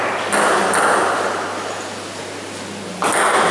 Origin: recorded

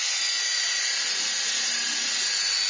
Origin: recorded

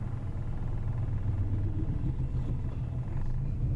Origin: recorded